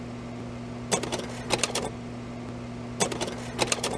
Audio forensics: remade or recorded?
recorded